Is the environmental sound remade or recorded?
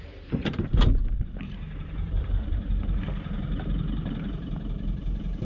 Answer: remade